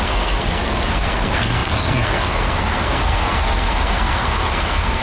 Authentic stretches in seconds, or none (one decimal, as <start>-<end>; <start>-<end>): none